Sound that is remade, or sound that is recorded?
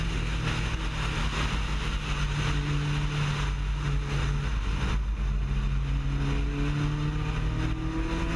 recorded